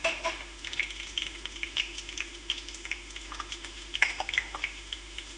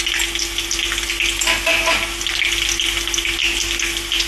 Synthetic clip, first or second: first